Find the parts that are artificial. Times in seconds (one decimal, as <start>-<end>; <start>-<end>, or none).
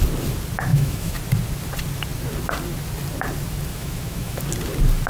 0.7-1.2; 3.7-4.4